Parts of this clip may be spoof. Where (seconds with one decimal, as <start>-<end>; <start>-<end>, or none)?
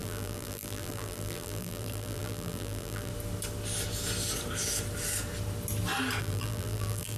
0.0-3.1; 6.2-7.2